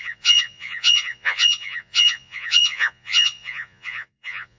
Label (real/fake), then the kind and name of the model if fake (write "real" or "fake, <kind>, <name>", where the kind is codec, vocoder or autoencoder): fake, vocoder, Vocos